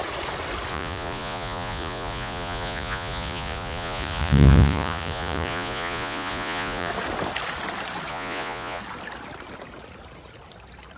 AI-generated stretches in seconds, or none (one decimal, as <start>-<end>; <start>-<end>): 0.7-6.9; 8.1-8.8